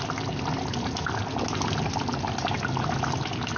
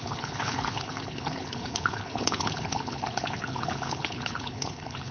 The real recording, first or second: first